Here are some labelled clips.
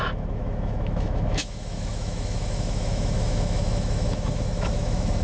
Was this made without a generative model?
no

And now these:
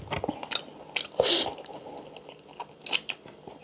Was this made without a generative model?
yes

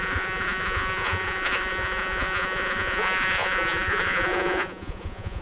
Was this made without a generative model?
no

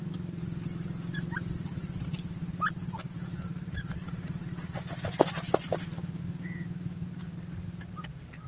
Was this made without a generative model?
yes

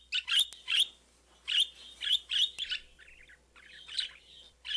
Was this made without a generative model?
yes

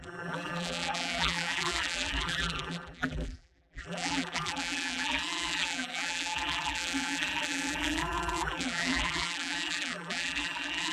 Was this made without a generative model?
no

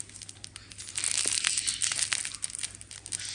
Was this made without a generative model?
yes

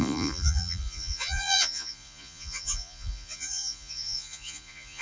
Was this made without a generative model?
no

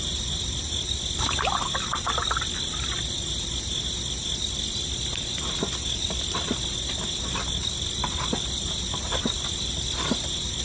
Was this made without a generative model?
yes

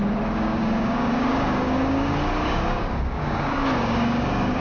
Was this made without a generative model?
no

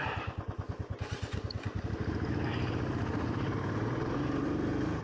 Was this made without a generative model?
no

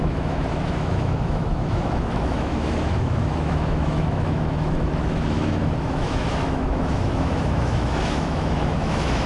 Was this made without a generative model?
no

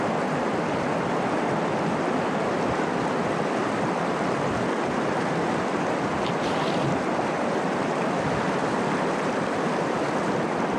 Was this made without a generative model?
yes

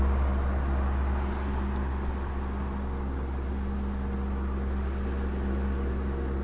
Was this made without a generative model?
yes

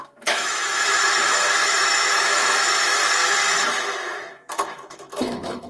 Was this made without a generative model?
no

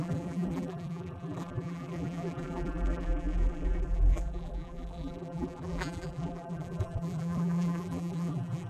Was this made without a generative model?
no